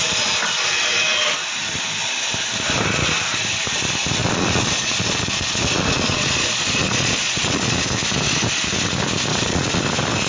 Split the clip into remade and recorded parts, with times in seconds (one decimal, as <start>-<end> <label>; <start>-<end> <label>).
0.0-4.2 recorded; 4.2-7.8 remade; 7.8-9.3 recorded; 9.3-9.8 remade; 9.8-10.3 recorded